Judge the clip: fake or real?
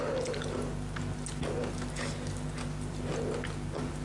real